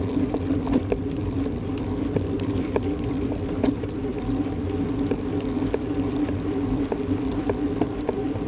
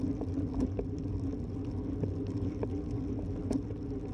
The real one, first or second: second